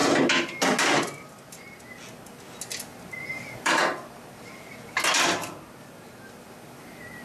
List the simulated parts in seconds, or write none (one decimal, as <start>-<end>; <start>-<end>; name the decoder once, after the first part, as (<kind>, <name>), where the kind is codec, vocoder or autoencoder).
2.9-4.9 (vocoder, BigVGAN v2)